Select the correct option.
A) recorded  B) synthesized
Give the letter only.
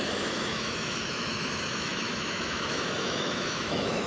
B